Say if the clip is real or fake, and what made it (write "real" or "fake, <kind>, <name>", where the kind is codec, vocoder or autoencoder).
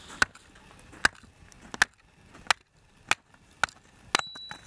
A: real